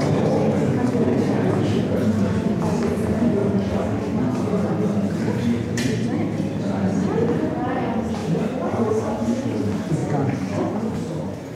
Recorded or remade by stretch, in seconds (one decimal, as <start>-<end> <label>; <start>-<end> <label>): 0.0-3.4 remade; 3.4-4.2 recorded; 4.2-10.0 remade; 10.0-10.9 recorded; 10.9-11.5 remade